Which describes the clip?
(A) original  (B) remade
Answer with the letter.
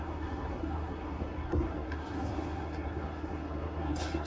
B